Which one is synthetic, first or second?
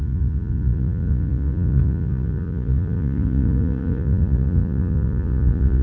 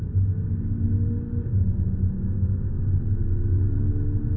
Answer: first